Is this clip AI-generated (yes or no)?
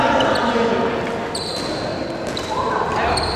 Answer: no